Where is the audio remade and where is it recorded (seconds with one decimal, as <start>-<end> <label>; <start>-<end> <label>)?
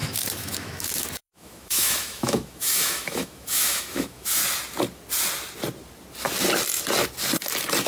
0.0-4.4 remade; 4.4-7.9 recorded